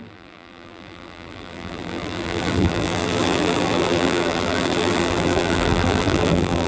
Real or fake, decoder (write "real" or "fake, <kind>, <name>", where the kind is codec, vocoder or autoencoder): fake, vocoder, BigVGAN v2